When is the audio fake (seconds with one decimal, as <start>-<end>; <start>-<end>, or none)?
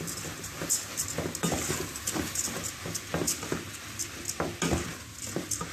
4.9-5.7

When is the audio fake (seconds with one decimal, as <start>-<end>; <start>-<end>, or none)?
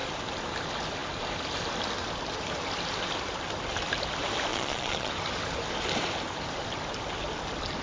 4.5-5.1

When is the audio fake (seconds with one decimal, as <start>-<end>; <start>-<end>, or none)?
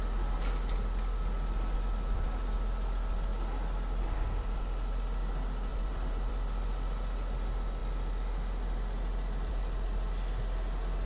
5.7-6.3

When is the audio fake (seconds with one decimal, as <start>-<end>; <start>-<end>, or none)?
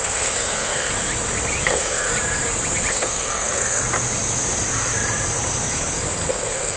0.0-0.9; 1.7-2.1; 2.9-3.8; 6.3-6.8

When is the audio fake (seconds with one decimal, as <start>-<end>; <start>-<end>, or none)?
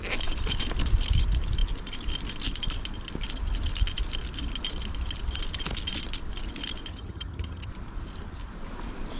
6.9-7.7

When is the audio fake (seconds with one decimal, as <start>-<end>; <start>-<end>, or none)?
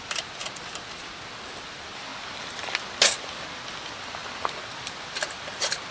0.0-0.4; 1.5-2.1; 2.7-4.2; 4.7-5.9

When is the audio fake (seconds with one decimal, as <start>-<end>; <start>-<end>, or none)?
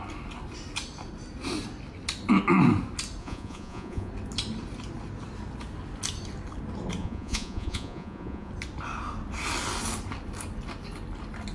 3.2-4.1; 7.0-8.5